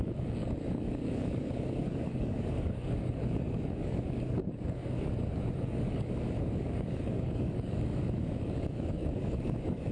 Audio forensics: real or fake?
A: fake